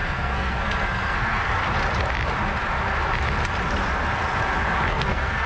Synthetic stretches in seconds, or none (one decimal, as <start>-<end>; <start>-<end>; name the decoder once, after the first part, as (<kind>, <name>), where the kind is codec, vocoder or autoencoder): 0.0-1.6 (codec, SNAC); 4.9-5.5